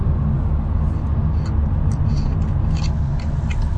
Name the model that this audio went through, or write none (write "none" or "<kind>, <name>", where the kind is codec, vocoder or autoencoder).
none